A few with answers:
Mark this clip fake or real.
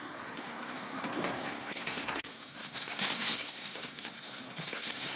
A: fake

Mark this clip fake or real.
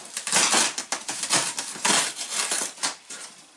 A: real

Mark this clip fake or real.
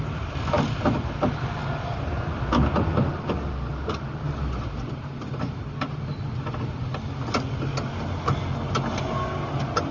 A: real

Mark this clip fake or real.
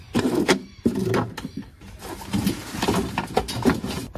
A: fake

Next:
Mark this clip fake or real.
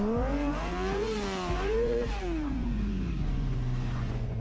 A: fake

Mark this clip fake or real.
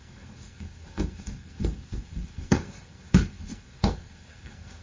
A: fake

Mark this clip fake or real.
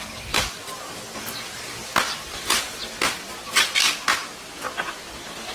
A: fake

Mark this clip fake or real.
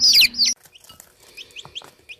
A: real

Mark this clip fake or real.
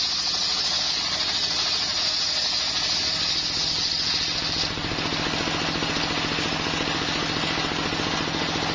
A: real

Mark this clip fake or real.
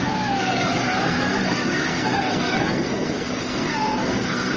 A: fake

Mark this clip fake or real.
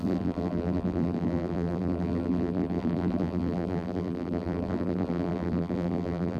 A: fake